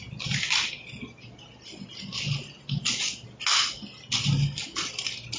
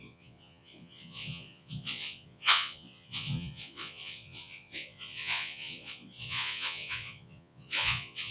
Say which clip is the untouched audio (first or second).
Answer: first